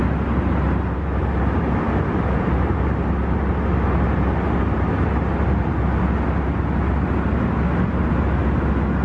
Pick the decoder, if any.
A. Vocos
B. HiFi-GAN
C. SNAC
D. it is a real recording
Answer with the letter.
D